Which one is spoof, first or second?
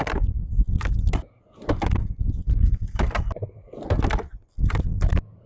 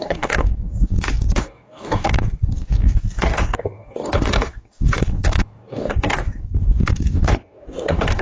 second